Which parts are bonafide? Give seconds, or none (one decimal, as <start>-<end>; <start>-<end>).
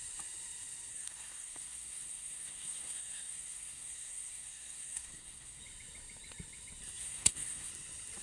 0.0-0.9; 5.6-7.0; 7.7-8.2